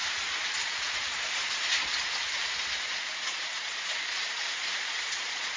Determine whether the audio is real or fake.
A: fake